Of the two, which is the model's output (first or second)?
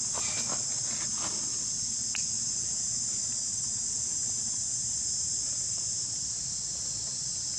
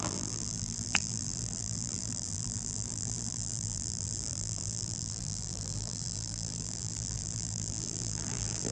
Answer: second